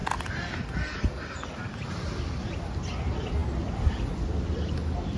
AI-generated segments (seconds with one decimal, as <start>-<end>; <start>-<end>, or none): none